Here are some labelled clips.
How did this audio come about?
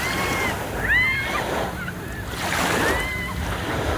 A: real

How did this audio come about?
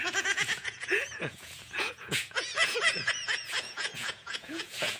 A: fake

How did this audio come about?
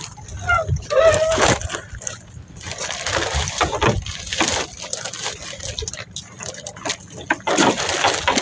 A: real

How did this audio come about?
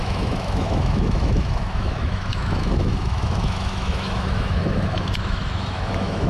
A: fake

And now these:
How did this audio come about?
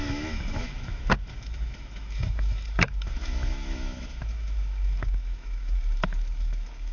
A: fake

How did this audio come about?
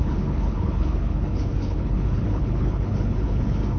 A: fake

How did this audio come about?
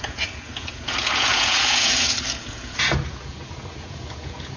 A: fake